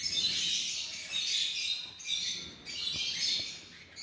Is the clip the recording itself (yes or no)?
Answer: yes